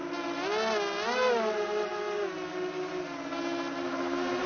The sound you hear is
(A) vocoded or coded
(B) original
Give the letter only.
B